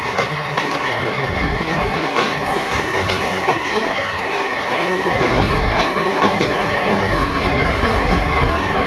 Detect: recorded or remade remade